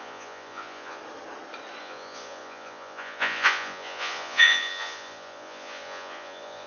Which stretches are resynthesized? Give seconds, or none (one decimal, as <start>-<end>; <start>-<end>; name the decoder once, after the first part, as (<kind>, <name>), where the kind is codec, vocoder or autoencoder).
0.0-1.0 (vocoder, Vocos); 1.8-6.7